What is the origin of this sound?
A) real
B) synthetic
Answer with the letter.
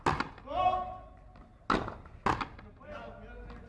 A